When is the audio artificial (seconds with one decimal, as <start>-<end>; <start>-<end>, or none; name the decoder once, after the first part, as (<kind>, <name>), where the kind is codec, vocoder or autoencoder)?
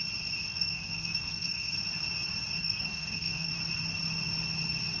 0.5-1.7 (codec, SNAC); 2.6-3.5